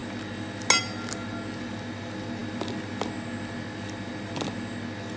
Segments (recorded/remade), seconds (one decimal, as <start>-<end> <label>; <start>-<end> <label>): 0.0-5.2 recorded